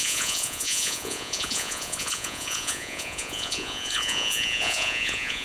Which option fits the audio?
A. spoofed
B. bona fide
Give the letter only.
A